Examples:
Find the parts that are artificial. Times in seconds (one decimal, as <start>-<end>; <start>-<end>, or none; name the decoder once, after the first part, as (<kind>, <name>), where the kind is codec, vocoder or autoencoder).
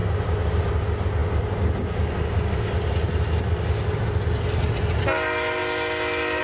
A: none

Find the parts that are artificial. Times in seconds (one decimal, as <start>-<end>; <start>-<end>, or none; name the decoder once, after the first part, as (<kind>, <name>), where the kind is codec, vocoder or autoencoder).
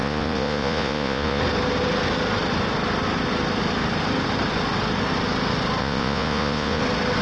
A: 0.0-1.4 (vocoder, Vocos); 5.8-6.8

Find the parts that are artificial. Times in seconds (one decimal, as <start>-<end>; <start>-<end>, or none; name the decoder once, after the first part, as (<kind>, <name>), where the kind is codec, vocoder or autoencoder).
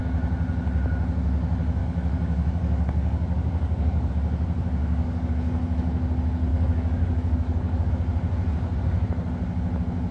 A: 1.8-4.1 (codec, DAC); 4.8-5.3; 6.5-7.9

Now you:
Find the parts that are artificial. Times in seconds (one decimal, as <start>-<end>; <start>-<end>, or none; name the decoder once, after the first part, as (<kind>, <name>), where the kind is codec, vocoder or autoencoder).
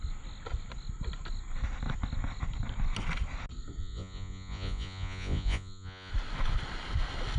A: 3.8-6.1 (vocoder, Vocos)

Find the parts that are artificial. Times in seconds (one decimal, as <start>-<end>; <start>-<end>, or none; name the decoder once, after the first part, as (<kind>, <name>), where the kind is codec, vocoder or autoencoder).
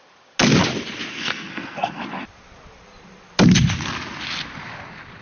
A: 1.1-2.0 (codec, SNAC)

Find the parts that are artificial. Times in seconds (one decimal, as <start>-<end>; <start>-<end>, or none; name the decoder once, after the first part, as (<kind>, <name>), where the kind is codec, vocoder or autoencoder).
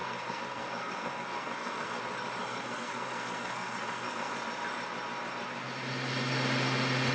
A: 0.0-2.0 (codec, SNAC); 2.4-4.3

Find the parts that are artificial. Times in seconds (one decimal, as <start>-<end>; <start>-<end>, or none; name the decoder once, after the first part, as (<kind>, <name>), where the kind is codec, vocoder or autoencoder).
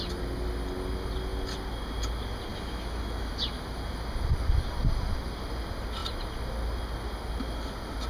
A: 2.5-3.3 (autoencoder, DAC-VAE)